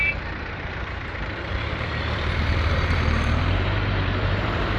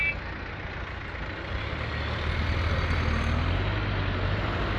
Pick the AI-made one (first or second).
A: first